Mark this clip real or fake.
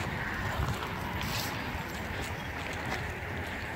real